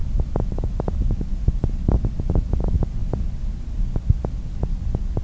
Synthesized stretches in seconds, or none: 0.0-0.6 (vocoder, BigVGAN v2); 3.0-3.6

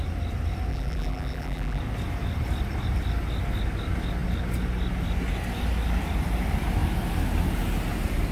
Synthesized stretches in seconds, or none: 0.7-1.8 (vocoder, BigVGAN v2)

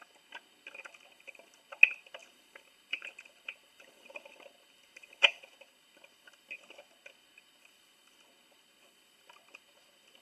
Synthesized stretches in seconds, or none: 2.2-5.4 (vocoder, BigVGAN v2)

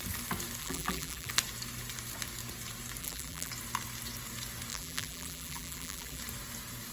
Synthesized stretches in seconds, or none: 0.6-1.3 (vocoder, BigVGAN v2); 3.0-3.5; 4.7-6.2

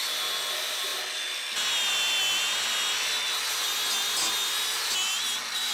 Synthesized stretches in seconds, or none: none